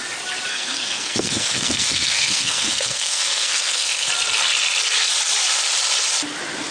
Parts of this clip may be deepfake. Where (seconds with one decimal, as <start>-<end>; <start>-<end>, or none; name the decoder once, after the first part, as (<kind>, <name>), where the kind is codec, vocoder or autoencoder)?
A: 0.5-4.1 (codec, SNAC)